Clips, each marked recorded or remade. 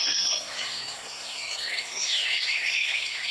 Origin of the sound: remade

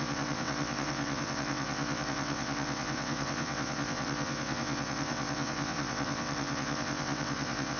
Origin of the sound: remade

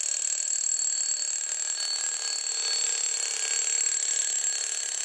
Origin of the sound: recorded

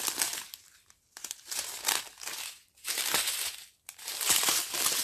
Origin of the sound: recorded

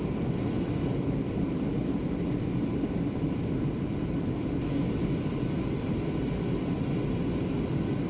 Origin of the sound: recorded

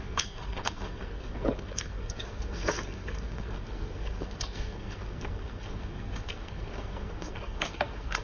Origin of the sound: remade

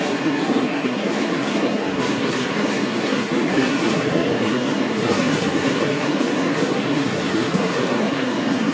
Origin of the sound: remade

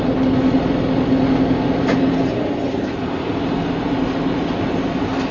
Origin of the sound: recorded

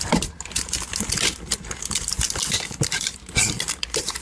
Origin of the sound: recorded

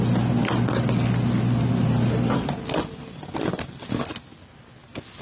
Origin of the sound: recorded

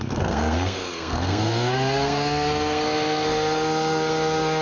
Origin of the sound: remade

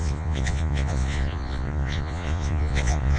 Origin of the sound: remade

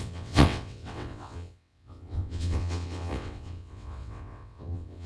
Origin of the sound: remade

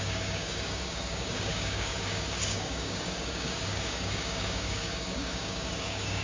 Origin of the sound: remade